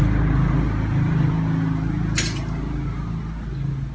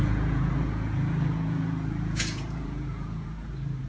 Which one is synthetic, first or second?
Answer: second